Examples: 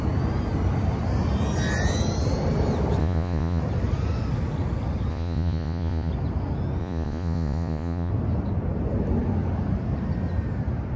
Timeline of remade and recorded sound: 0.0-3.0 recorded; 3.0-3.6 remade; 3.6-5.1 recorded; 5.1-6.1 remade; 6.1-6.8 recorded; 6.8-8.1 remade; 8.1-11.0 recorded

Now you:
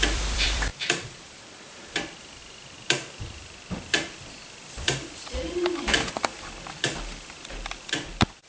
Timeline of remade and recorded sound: 0.0-8.5 remade

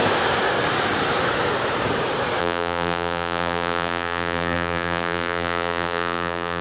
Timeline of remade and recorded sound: 0.0-2.4 recorded; 2.4-6.6 remade